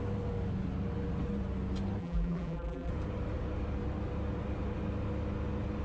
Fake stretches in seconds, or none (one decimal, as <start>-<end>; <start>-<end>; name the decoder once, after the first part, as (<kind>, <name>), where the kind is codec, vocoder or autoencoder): 2.0-2.9 (vocoder, BigVGAN v2)